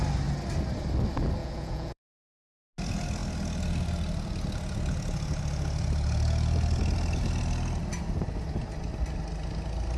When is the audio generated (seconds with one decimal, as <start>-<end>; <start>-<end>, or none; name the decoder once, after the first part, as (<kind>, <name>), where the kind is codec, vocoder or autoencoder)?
1.4-2.7 (vocoder, Vocos)